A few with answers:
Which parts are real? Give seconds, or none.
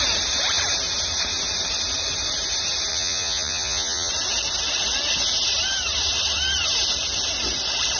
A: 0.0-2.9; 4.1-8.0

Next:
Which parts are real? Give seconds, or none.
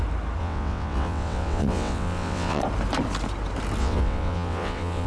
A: 0.0-0.4; 2.6-3.8